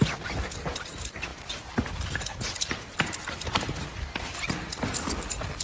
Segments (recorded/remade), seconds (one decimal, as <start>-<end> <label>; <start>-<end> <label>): 0.0-5.6 recorded